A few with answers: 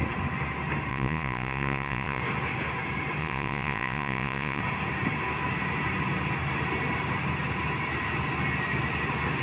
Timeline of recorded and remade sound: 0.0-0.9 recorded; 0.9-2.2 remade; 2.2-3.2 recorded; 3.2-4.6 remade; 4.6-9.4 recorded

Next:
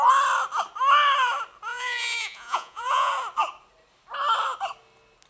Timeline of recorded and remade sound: 0.0-1.7 recorded; 1.7-3.1 remade; 3.1-5.3 recorded

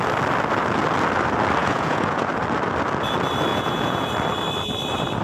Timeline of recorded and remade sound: 0.0-1.6 recorded; 1.6-2.3 remade; 2.3-3.5 recorded; 3.5-4.1 remade; 4.1-5.2 recorded